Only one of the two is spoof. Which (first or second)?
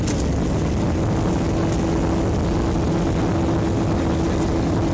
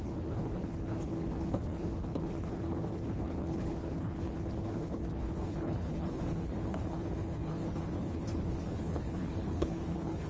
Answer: second